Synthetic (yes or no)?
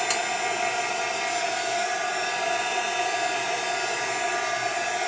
no